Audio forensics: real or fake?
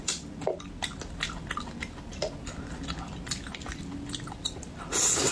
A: real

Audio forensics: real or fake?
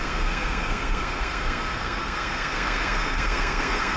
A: fake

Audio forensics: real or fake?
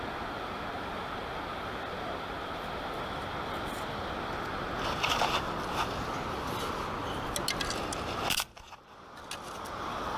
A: real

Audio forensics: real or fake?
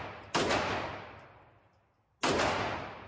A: real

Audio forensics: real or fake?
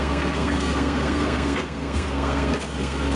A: fake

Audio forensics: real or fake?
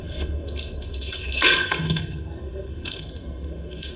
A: fake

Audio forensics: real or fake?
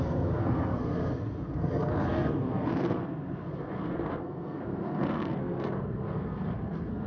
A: fake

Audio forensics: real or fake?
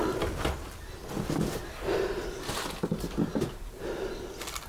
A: real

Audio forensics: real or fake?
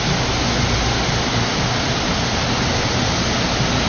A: real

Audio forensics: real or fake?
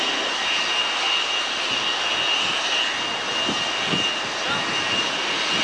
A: real